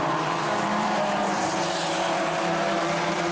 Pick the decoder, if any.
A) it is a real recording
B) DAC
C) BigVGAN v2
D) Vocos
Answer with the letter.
C